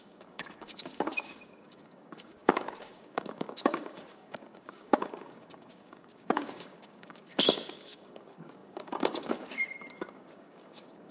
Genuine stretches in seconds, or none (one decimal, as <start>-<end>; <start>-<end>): none